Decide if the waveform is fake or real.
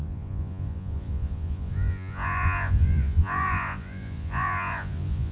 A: fake